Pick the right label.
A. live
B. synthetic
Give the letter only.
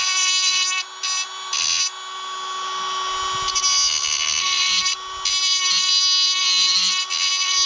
A